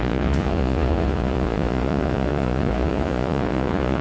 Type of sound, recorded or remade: remade